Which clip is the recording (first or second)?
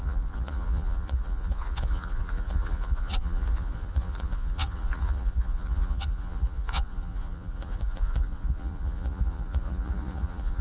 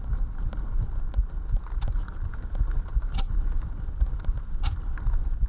second